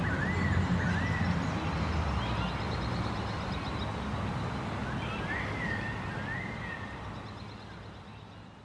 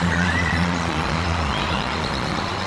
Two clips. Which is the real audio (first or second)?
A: first